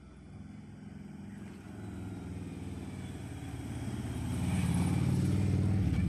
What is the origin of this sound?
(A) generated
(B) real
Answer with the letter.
B